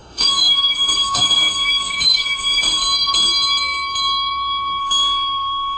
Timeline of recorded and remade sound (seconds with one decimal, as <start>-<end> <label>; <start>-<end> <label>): 0.0-2.8 remade; 2.8-4.8 recorded; 4.8-5.8 remade